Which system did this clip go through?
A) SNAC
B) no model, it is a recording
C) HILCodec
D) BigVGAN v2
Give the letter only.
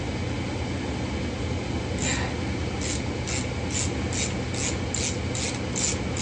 B